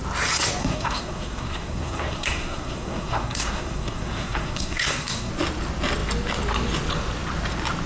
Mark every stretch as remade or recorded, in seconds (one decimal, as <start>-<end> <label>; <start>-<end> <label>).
0.0-0.6 recorded; 0.6-5.3 remade; 5.3-7.9 recorded